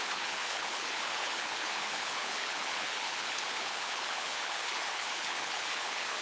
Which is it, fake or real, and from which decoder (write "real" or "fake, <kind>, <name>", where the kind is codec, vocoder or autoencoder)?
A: fake, codec, HILCodec